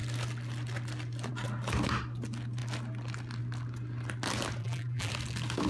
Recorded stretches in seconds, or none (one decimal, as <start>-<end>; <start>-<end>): 0.0-4.6; 5.1-5.7